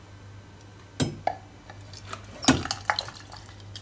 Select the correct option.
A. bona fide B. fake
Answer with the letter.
A